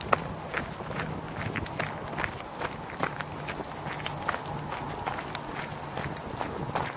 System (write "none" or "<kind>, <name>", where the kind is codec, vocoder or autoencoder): none